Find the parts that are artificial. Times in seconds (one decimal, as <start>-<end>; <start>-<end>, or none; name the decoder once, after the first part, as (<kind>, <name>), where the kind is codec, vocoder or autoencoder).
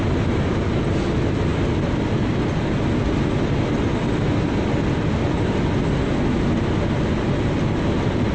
none